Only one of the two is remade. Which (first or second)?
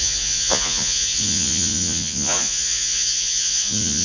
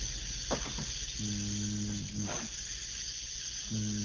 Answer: first